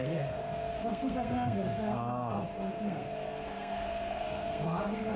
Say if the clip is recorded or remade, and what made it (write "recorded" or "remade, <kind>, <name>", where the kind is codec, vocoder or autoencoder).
remade, codec, SNAC